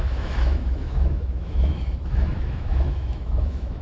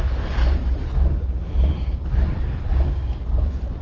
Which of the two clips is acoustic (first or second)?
second